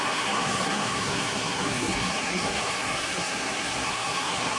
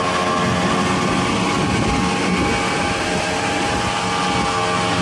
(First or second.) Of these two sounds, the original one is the second